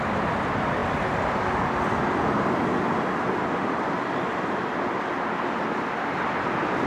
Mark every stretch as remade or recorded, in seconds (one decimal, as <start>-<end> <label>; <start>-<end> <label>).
0.0-6.9 recorded